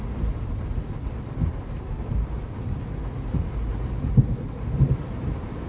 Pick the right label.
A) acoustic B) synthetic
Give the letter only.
A